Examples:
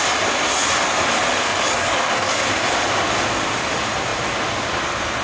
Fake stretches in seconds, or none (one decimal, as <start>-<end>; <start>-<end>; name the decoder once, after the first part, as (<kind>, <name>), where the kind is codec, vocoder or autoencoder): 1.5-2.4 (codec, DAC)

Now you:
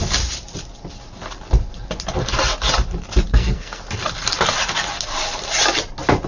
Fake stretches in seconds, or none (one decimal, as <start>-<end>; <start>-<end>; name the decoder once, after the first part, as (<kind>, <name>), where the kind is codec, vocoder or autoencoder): 3.3-3.8 (codec, SNAC)

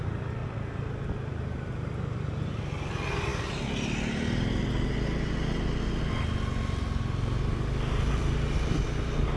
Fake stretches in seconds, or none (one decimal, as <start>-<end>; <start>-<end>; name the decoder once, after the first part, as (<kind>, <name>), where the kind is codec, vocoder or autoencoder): none

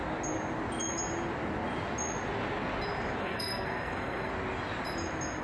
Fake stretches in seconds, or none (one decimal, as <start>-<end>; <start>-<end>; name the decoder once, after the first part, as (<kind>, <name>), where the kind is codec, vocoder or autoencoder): 3.2-4.3 (codec, SNAC)